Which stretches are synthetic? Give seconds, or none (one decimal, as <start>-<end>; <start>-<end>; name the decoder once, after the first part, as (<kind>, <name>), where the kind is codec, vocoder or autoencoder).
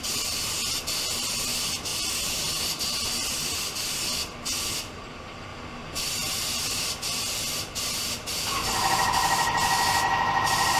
none